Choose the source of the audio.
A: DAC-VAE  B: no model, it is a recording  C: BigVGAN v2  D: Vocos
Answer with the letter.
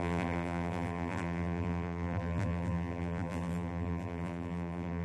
C